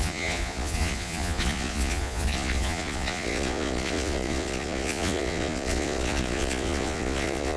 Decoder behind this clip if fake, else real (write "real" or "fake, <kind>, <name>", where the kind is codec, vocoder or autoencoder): fake, vocoder, Vocos